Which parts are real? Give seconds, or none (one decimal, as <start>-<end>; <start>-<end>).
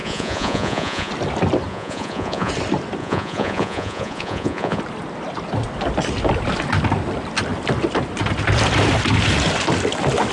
1.1-1.7; 2.5-3.0; 4.8-10.3